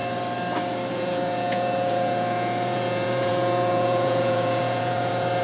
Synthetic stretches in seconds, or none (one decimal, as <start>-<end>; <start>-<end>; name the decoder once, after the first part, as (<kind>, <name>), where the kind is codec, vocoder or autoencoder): 0.9-5.4 (vocoder, Vocos)